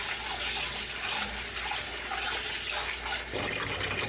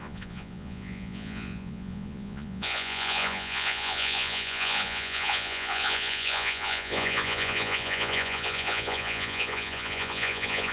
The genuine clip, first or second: first